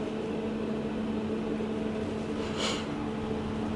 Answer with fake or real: real